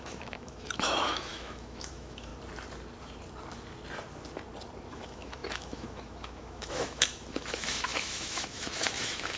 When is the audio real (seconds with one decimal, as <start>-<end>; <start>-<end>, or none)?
2.3-4.9